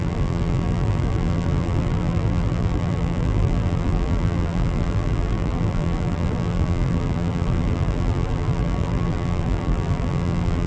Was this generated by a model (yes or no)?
yes